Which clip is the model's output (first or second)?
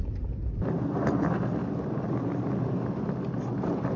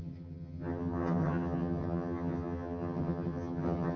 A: second